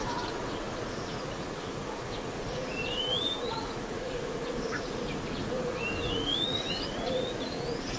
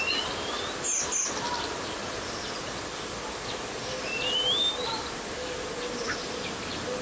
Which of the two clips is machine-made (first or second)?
first